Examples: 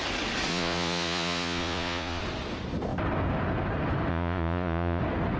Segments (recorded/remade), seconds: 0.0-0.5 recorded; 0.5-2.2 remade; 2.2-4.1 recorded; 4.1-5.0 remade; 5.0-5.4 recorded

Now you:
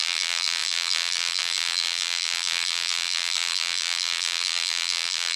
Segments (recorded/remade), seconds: 0.0-5.4 remade

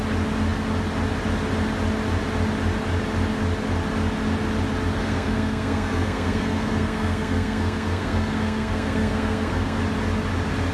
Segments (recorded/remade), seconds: 0.0-5.0 recorded; 5.0-9.8 remade; 9.8-10.7 recorded